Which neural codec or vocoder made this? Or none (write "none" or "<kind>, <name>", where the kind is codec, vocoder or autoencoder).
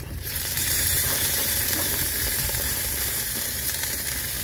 vocoder, BigVGAN v2